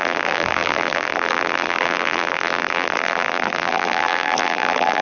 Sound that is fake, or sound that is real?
fake